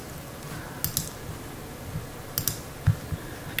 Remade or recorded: recorded